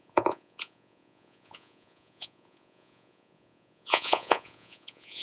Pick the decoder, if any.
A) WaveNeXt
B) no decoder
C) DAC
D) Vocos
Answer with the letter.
D